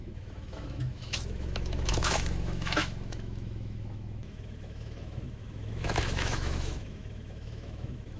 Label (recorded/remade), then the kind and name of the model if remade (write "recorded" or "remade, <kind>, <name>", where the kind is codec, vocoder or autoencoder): remade, autoencoder, DAC-VAE